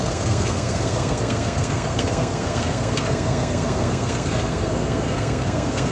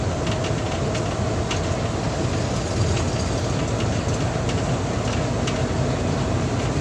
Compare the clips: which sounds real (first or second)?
second